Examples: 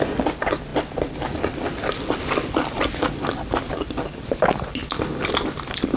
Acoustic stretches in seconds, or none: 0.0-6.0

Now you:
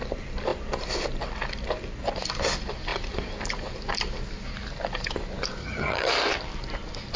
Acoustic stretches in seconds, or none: 0.0-5.6; 6.1-7.2

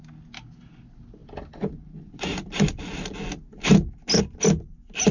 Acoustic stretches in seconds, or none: 0.0-5.1

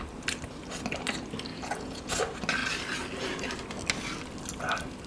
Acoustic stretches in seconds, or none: 0.0-1.5; 2.1-5.1

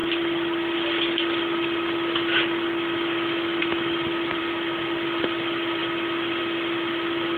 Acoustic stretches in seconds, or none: 0.0-7.4

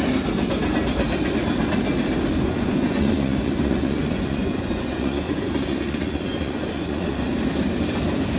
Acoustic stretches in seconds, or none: 0.0-2.3; 7.3-8.4

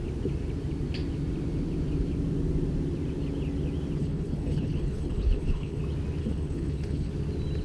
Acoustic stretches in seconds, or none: 0.0-4.0; 5.8-6.2; 7.1-7.6

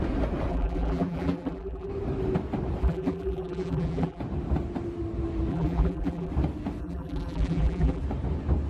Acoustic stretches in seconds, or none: 0.0-0.5; 1.9-2.8; 4.2-5.5; 6.3-6.8; 8.0-8.7